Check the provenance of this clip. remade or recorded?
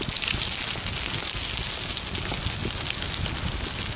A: recorded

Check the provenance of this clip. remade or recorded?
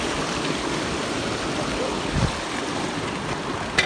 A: recorded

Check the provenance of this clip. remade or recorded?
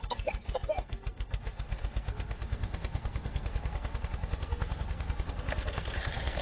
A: remade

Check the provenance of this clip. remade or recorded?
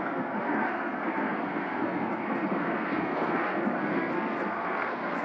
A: remade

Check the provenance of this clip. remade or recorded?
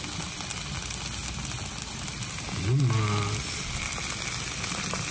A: recorded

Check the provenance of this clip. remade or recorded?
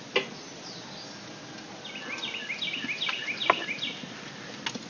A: recorded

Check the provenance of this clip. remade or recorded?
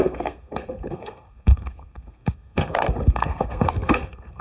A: remade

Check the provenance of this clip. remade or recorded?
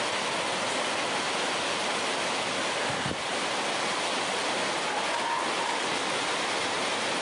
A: recorded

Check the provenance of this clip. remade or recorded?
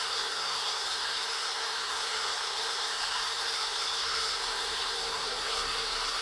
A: remade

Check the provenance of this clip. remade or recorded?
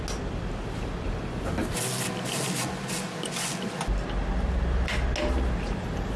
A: recorded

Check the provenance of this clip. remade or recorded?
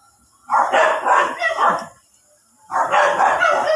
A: recorded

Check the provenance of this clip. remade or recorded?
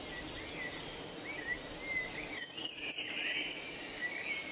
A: recorded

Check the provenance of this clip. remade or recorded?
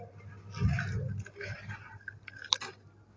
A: recorded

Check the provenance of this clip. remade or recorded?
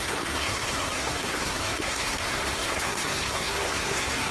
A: remade